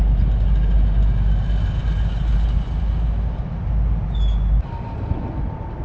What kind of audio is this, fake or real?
real